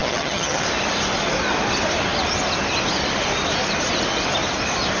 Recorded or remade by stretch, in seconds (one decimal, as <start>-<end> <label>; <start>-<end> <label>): 0.0-0.6 remade; 0.6-5.0 recorded